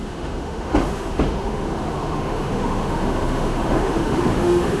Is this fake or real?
fake